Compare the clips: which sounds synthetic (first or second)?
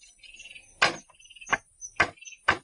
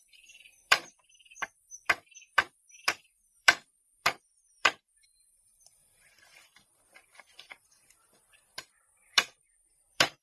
second